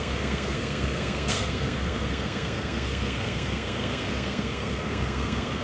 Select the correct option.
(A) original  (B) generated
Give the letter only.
B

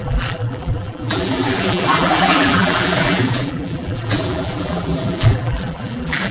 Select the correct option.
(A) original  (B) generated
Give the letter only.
B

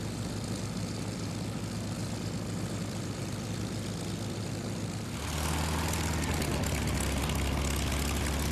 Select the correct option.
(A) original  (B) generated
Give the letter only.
A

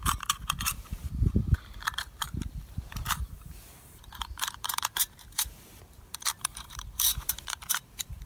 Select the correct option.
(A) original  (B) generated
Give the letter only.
B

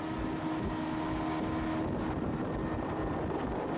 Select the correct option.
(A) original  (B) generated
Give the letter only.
A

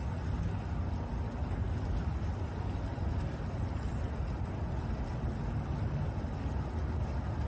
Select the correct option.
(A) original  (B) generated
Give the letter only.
A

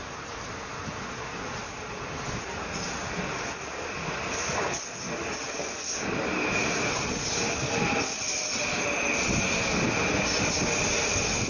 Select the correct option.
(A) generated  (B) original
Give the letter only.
B